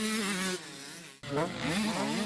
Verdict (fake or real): real